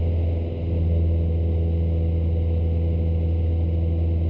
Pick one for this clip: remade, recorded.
recorded